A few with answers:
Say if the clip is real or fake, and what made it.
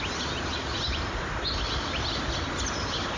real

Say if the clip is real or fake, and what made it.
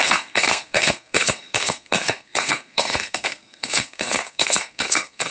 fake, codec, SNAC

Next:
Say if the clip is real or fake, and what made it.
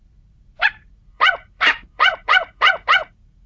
fake, vocoder, Vocos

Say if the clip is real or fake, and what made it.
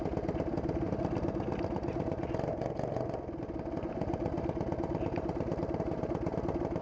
real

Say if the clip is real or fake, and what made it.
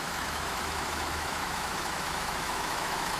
fake, autoencoder, DAC-VAE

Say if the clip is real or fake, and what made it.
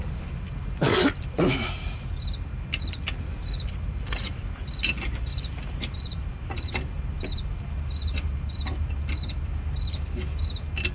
real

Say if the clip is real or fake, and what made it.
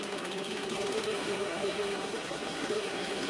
fake, codec, SNAC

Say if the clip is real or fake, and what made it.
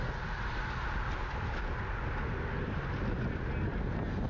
real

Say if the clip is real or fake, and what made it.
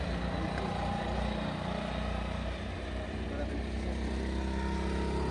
real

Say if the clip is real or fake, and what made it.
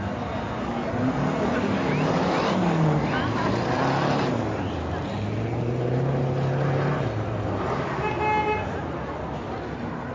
real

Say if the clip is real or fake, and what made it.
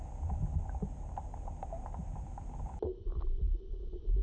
real